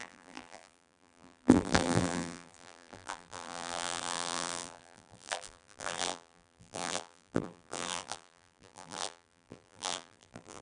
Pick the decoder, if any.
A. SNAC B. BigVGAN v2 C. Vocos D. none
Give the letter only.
B